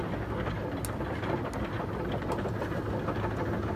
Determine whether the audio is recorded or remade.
recorded